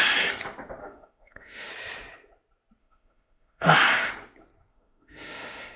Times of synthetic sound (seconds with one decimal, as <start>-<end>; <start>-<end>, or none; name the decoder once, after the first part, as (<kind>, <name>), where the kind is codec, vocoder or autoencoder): 0.8-1.7 (autoencoder, DAC-VAE); 2.8-4.1; 4.7-5.8